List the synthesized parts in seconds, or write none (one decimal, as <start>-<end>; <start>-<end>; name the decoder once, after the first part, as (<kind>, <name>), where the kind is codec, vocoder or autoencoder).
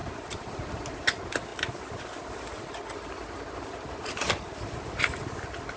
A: none